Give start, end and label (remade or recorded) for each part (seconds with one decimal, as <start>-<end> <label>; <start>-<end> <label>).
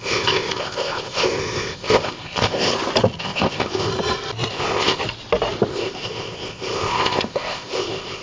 0.0-2.7 remade; 2.7-3.2 recorded; 3.2-3.9 remade; 3.9-4.5 recorded; 4.5-5.0 remade; 5.0-5.7 recorded; 5.7-8.2 remade